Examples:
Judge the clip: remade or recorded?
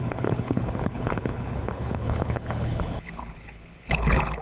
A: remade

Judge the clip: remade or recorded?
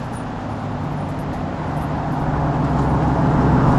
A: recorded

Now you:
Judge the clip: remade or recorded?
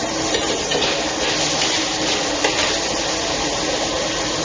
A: recorded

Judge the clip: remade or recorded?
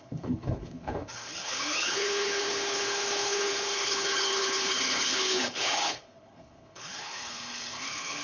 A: remade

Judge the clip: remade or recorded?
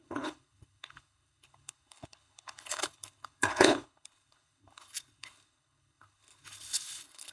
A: remade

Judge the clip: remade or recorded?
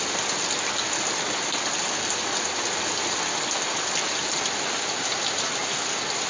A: recorded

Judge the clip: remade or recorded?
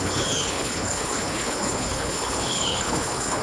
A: remade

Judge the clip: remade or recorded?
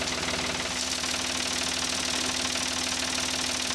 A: recorded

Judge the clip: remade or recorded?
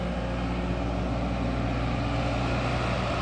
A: recorded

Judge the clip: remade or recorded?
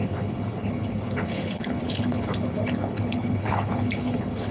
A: remade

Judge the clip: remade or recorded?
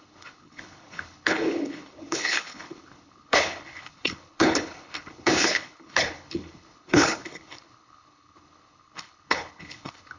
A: remade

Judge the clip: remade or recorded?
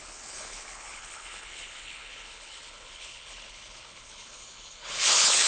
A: remade